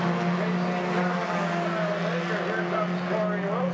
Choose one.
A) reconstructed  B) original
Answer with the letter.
B